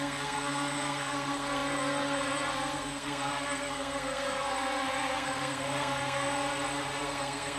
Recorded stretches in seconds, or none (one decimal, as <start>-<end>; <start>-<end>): 6.4-7.0